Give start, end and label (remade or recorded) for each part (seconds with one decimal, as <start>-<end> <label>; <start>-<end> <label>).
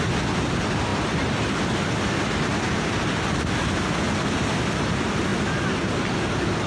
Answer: 0.0-6.7 recorded